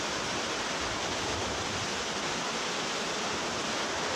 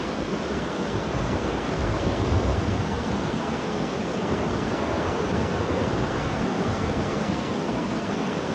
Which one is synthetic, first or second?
second